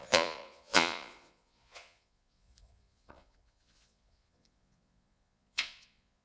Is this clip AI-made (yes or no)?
yes